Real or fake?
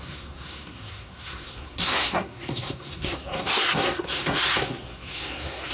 fake